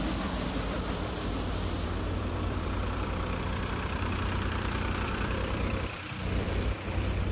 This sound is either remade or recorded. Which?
remade